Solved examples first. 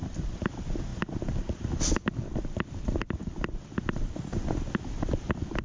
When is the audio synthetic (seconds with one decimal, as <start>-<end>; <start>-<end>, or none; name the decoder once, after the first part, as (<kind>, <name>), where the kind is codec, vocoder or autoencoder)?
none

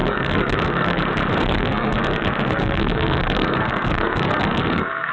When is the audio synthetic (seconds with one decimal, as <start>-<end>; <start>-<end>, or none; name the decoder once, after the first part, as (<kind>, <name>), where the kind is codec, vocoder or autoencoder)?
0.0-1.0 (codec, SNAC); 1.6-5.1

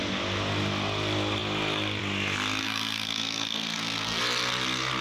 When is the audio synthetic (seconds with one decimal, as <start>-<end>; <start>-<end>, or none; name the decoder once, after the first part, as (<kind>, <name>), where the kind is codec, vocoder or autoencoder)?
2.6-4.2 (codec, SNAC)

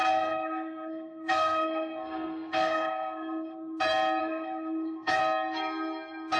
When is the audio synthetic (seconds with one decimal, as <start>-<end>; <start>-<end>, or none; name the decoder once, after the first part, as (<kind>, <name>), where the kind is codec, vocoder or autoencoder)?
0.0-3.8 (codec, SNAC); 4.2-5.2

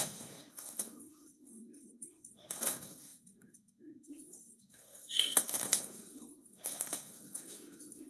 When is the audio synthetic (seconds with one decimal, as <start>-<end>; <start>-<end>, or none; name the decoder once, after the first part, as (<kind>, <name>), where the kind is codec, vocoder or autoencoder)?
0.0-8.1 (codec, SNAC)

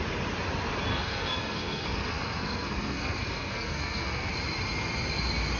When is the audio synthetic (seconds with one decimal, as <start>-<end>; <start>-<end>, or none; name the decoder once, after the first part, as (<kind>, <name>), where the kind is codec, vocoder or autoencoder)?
0.9-4.3 (codec, SNAC)